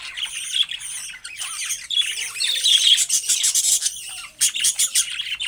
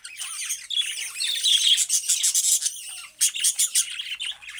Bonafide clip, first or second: second